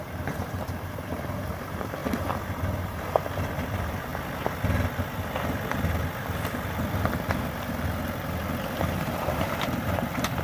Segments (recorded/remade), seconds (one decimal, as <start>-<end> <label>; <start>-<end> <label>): 0.0-2.0 remade; 2.0-2.5 recorded; 2.5-4.1 remade; 4.1-8.8 recorded; 8.8-10.4 remade